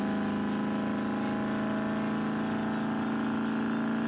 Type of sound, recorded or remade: recorded